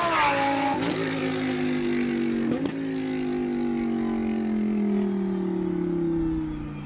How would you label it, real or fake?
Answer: real